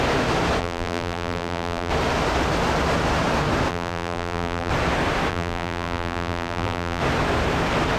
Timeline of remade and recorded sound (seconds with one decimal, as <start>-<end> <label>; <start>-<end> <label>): 0.0-0.6 recorded; 0.6-1.9 remade; 1.9-3.7 recorded; 3.7-4.7 remade; 4.7-5.3 recorded; 5.3-7.0 remade; 7.0-8.0 recorded

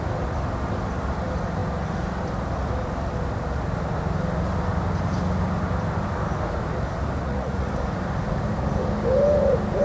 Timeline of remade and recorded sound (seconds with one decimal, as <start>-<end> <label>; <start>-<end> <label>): 0.0-7.2 recorded; 7.2-7.7 remade; 7.7-9.8 recorded

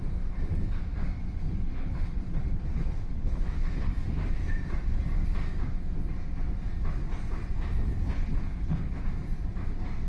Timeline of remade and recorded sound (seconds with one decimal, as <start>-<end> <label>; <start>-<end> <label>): 0.0-1.2 recorded; 1.2-3.9 remade; 3.9-7.9 recorded; 7.9-9.0 remade; 9.0-10.1 recorded

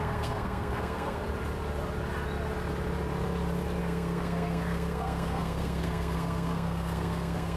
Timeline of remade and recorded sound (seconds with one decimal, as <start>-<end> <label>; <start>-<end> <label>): 0.0-1.2 remade; 1.2-3.8 recorded; 3.8-7.6 remade